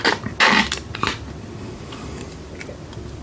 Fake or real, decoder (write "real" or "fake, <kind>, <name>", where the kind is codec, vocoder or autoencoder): real